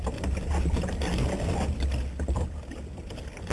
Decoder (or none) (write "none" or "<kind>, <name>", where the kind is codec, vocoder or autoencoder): none